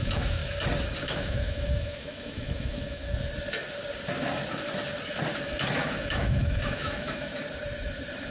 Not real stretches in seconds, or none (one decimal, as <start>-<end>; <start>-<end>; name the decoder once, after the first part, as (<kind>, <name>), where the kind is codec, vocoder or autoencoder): 0.0-0.4 (autoencoder, DAC-VAE); 1.0-3.0; 5.8-7.3